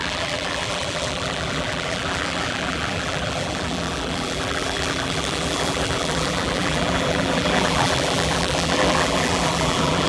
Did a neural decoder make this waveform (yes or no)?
yes